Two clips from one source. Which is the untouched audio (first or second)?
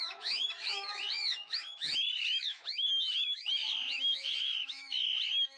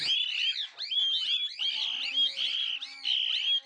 second